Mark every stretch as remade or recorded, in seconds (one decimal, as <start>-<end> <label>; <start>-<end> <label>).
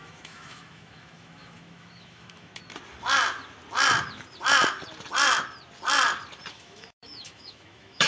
0.0-2.5 remade; 2.5-6.5 recorded; 6.5-8.1 remade